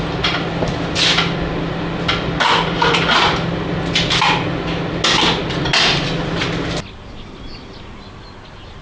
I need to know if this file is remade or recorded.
recorded